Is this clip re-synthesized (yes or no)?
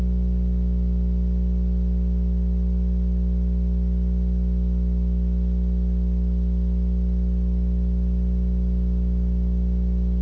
no